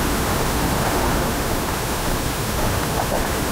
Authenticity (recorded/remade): remade